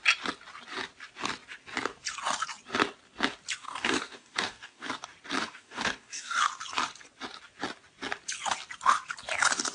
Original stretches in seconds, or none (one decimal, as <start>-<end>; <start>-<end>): 0.0-3.6; 4.9-5.4; 6.4-9.7